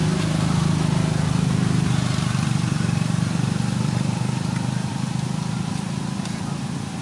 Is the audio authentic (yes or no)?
yes